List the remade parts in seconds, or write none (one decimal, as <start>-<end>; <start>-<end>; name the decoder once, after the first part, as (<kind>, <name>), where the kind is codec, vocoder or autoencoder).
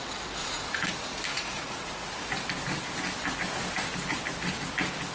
0.4-0.9 (vocoder, Vocos); 1.3-2.1